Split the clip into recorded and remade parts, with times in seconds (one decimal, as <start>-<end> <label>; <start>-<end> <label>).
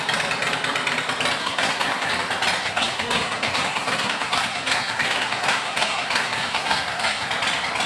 0.0-1.4 recorded; 1.4-2.1 remade; 2.1-2.6 recorded; 2.6-7.3 remade; 7.3-7.9 recorded